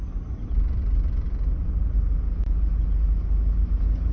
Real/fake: real